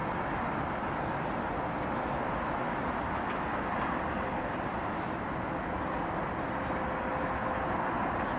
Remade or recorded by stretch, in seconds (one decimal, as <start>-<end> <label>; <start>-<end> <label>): 0.0-8.4 recorded